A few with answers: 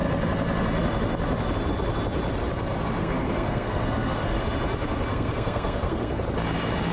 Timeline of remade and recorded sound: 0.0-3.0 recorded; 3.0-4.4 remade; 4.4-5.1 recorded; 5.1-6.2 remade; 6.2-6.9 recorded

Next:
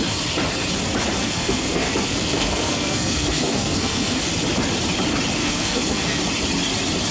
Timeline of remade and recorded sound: 0.0-1.2 recorded; 1.2-4.2 remade; 4.2-5.4 recorded; 5.4-6.2 remade; 6.2-7.1 recorded

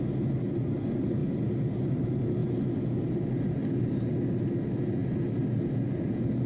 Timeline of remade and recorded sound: 0.0-6.5 recorded